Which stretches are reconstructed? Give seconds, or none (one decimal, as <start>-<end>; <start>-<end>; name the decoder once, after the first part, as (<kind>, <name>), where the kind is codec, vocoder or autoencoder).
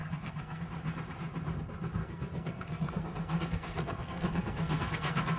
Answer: 0.0-0.6 (codec, SNAC); 2.0-5.4